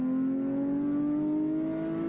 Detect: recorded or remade recorded